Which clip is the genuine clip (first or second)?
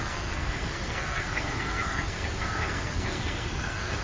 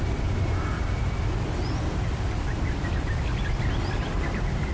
second